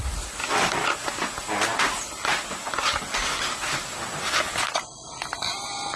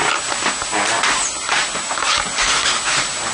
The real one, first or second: second